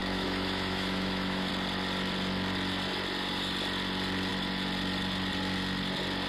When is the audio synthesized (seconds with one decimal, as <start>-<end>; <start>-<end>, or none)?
0.0-1.5